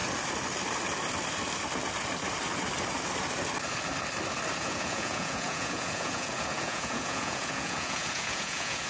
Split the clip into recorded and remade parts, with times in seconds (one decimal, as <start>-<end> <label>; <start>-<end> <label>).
0.0-4.6 recorded; 4.6-8.9 remade